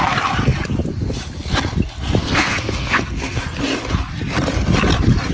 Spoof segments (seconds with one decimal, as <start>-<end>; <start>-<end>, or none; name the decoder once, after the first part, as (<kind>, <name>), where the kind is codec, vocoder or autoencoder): 2.2-3.4 (codec, SNAC)